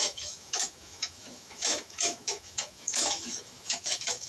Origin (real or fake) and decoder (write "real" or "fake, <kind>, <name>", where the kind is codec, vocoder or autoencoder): fake, autoencoder, DAC-VAE